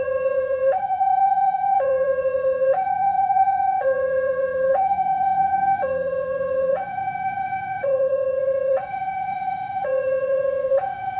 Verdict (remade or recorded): remade